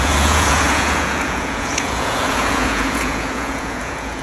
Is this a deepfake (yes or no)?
yes